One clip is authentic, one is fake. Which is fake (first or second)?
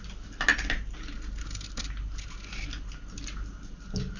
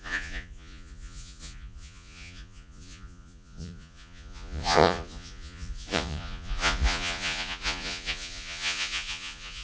second